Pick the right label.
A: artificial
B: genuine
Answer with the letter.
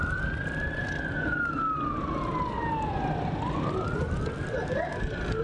B